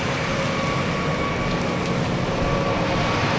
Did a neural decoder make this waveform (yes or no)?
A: no